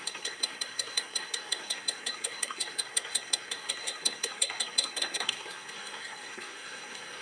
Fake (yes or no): yes